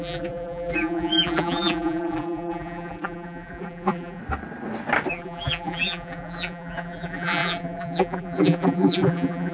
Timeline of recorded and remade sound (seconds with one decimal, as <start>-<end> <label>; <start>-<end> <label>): 0.0-4.2 remade; 4.2-5.1 recorded; 5.1-9.5 remade